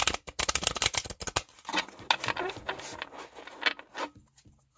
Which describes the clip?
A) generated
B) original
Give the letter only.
B